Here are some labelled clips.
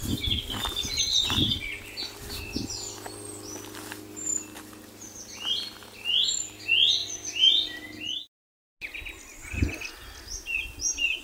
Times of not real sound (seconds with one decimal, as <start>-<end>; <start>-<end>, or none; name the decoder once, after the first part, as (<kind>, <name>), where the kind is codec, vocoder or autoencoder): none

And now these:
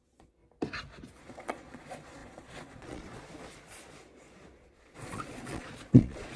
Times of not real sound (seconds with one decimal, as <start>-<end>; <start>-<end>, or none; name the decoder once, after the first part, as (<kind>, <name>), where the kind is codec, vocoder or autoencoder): 0.0-0.4 (vocoder, Vocos); 1.2-6.4

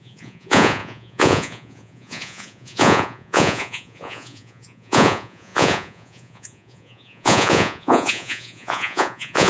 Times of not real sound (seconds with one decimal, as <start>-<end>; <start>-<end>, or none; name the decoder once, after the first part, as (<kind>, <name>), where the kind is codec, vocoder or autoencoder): 0.0-9.5 (vocoder, Vocos)